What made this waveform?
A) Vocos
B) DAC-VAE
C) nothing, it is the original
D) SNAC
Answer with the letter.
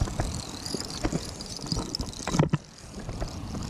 C